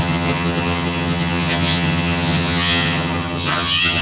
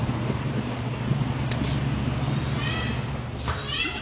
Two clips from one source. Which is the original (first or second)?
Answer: second